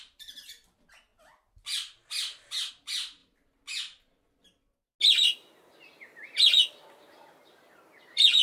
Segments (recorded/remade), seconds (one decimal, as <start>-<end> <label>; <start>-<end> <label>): 0.0-8.4 recorded